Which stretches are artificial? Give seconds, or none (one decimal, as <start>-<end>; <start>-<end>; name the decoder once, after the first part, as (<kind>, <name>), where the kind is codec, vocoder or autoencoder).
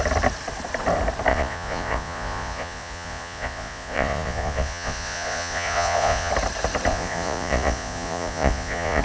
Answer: 1.3-6.3 (vocoder, Vocos); 6.9-9.0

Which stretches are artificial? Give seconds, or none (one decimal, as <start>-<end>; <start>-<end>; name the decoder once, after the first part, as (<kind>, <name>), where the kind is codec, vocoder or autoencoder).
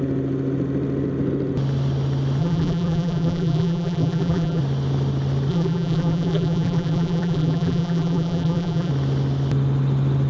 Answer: 2.4-4.6 (vocoder, BigVGAN v2); 5.5-8.9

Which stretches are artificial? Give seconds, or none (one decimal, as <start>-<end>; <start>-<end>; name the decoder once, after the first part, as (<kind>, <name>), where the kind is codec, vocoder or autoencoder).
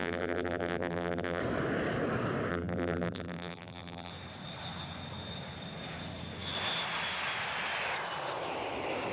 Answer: 0.0-1.4 (vocoder, BigVGAN v2); 2.5-4.1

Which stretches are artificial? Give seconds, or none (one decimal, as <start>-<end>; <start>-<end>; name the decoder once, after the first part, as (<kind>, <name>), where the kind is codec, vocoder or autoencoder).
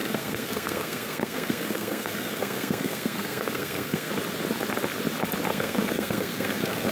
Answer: 0.0-4.1 (codec, SNAC); 5.5-6.9